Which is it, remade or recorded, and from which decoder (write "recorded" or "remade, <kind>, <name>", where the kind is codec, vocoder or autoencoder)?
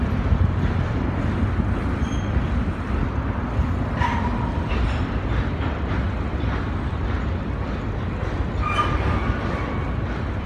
recorded